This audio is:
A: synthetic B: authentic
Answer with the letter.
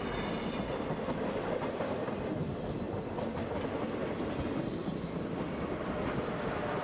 B